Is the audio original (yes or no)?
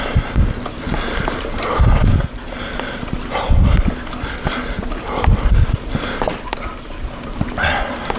yes